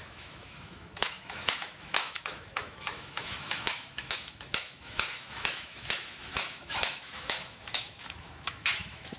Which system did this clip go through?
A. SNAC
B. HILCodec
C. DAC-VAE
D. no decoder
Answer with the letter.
C